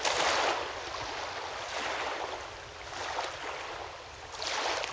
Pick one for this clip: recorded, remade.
recorded